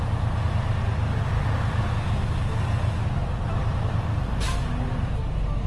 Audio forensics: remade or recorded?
recorded